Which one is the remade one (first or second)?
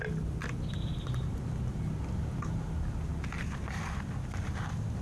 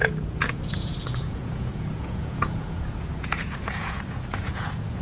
second